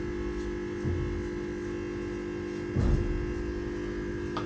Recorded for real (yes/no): yes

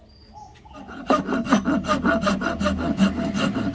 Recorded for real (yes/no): yes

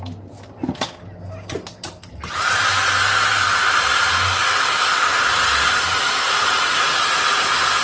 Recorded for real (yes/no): yes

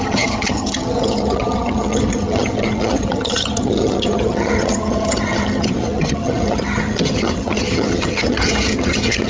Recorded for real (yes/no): no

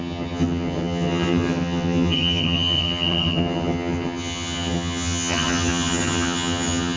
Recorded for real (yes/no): no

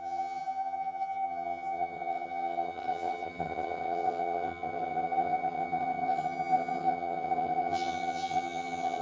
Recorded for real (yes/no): no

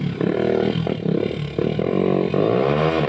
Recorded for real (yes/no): yes